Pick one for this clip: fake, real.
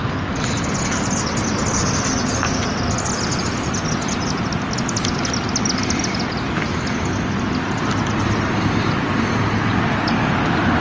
real